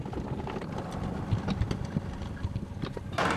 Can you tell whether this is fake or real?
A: real